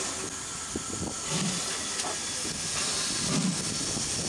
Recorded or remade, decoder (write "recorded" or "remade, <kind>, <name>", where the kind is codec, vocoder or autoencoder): recorded